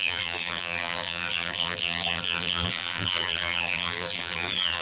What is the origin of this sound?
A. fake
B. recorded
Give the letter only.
A